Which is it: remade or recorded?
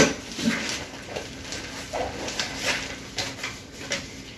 recorded